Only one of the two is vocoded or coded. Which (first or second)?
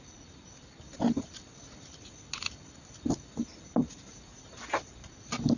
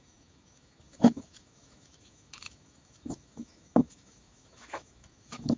second